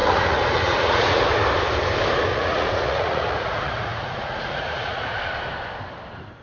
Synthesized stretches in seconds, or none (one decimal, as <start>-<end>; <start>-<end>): 0.0-1.2; 2.3-5.2